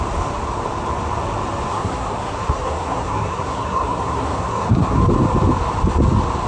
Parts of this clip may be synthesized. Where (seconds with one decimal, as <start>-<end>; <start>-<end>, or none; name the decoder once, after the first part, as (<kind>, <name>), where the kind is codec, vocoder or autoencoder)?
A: 1.7-5.0 (codec, SNAC)